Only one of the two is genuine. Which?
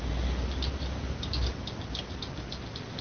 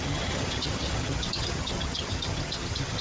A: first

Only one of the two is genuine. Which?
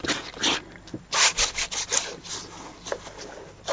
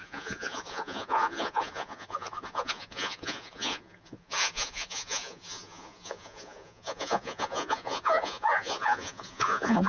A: first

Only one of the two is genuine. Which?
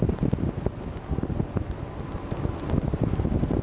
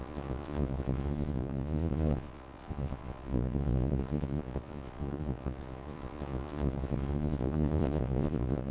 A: first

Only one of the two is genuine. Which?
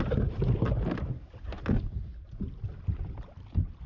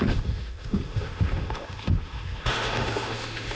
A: first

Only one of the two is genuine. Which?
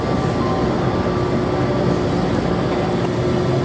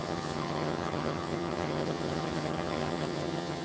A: first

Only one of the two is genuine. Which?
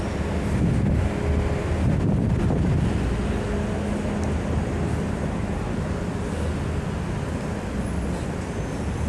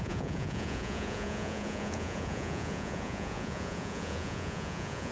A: first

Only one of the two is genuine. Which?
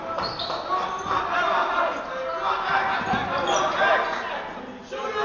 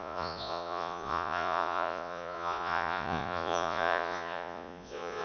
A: first